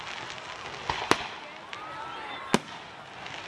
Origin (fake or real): real